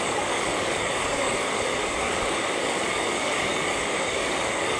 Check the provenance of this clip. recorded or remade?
remade